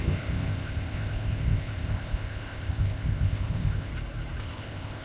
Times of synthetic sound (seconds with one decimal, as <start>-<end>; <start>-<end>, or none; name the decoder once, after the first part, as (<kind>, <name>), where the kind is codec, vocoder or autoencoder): 0.0-3.9 (codec, ZipCodec); 4.4-5.0